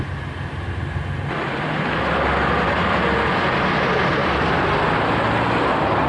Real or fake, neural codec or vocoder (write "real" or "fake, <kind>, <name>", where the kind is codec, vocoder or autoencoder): real